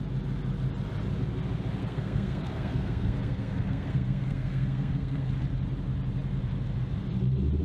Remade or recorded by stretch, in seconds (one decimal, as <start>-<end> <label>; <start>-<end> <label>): 0.0-1.8 recorded; 1.8-5.3 remade; 5.3-7.6 recorded